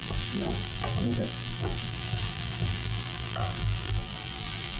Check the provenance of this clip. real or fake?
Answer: fake